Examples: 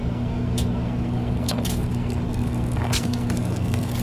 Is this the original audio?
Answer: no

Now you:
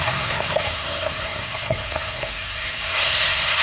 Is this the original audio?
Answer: no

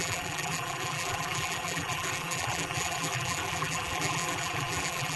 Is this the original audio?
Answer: no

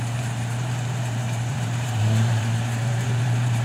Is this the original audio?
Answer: no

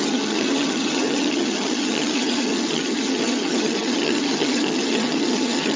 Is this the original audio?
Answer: no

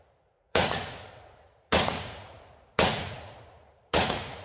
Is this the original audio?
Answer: no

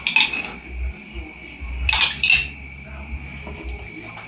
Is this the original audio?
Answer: yes